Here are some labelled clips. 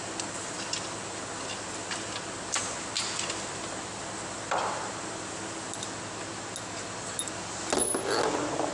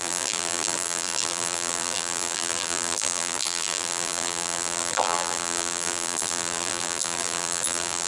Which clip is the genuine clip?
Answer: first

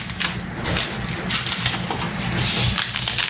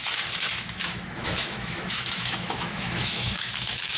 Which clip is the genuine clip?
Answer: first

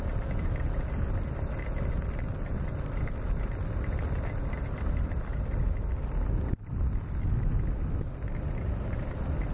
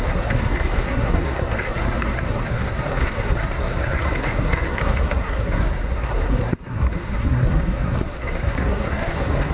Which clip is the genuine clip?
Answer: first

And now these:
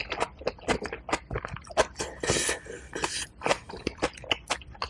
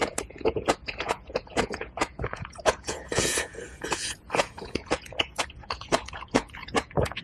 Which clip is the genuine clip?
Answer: first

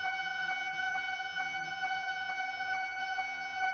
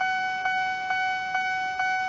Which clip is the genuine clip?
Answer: second